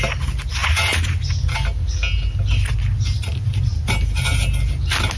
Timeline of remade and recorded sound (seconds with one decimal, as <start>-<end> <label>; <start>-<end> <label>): 0.0-5.2 recorded